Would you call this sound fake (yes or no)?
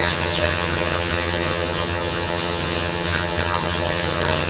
yes